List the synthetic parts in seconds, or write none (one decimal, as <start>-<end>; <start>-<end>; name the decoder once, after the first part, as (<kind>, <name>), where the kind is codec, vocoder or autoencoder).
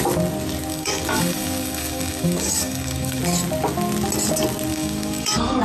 0.7-3.2 (codec, DAC); 4.7-5.6